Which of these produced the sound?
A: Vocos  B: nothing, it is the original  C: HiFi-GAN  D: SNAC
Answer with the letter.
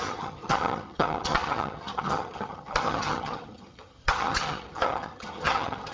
C